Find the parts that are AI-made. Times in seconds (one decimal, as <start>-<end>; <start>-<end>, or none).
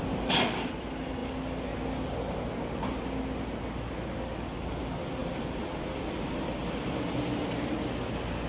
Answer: none